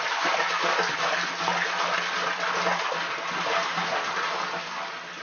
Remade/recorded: recorded